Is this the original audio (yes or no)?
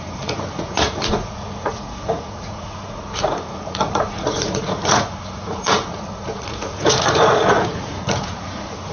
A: no